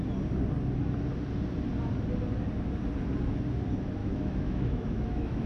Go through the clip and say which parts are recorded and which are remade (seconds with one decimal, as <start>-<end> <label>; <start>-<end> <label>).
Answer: 0.0-4.0 recorded; 4.0-5.5 remade